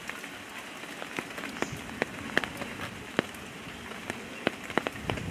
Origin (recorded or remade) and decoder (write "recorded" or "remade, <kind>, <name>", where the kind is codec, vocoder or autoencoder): recorded